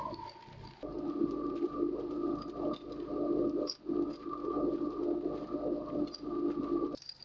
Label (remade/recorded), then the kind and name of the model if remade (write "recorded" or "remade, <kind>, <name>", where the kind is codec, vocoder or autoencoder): recorded